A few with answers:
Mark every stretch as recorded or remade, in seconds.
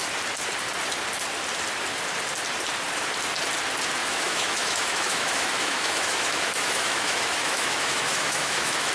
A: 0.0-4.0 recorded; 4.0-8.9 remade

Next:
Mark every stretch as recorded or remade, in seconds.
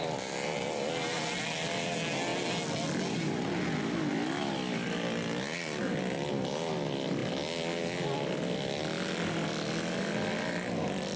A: 0.0-11.2 recorded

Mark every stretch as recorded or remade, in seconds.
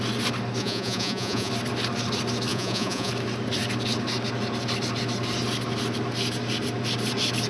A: 0.0-0.6 recorded; 0.6-1.5 remade; 1.5-2.5 recorded; 2.5-3.1 remade; 3.1-7.5 recorded